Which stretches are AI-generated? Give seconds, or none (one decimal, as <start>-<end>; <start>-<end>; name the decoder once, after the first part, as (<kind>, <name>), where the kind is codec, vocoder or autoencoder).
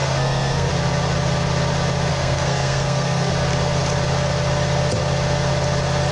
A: 0.0-0.7 (codec, SNAC); 2.1-3.3